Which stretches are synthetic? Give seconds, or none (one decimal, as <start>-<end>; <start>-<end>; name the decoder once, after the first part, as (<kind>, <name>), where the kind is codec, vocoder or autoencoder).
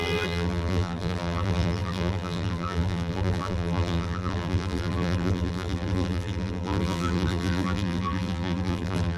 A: 0.0-9.2 (vocoder, BigVGAN v2)